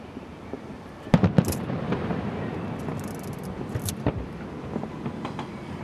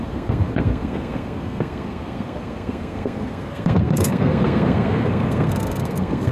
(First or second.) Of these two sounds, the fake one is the second